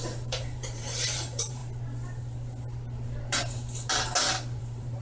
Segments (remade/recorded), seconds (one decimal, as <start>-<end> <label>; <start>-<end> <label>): 0.0-1.6 remade; 1.6-4.6 recorded; 4.6-5.0 remade